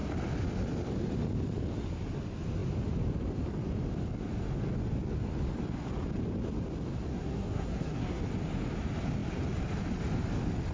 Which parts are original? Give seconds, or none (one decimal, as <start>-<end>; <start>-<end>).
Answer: 0.0-7.1; 8.2-10.7